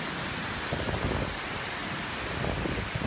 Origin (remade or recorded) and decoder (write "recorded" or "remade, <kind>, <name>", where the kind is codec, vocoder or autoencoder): recorded